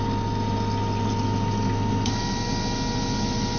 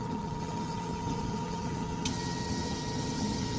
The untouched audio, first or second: first